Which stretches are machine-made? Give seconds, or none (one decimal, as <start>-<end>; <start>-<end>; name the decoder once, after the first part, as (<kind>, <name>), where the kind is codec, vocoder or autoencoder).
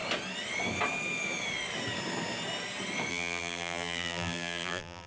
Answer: 3.1-5.1 (vocoder, BigVGAN v2)